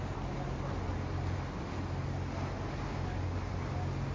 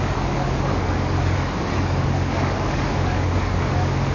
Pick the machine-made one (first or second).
second